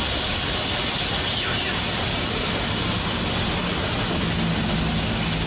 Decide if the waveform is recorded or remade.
recorded